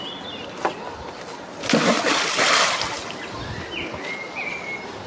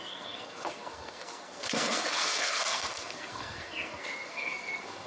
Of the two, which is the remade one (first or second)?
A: second